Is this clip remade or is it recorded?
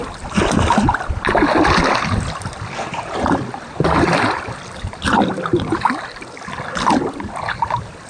recorded